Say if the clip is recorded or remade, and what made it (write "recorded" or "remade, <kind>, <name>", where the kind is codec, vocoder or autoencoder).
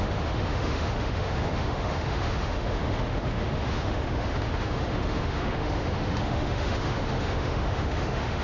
remade, autoencoder, DAC-VAE